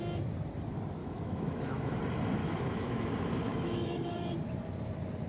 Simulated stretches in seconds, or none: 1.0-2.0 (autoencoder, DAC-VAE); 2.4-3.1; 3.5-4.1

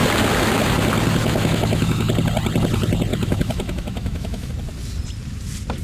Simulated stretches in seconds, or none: 1.2-2.1 (autoencoder, DAC-VAE); 3.1-4.5

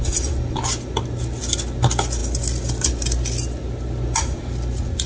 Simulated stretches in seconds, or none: none

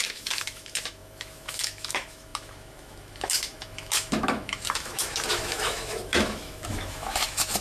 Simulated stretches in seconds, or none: 0.0-7.6 (autoencoder, DAC-VAE)

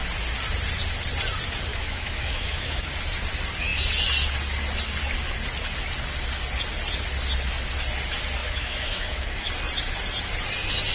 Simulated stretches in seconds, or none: 1.7-2.9 (autoencoder, DAC-VAE); 8.4-9.5

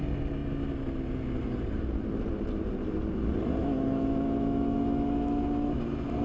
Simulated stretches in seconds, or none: 3.6-5.8 (autoencoder, DAC-VAE)

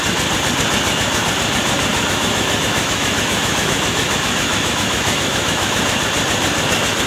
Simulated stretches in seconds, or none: 1.9-5.8 (autoencoder, DAC-VAE)

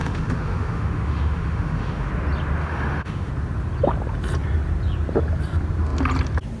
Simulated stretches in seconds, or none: 0.0-2.1 (autoencoder, DAC-VAE); 2.6-3.3